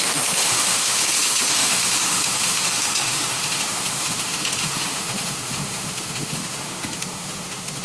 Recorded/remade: remade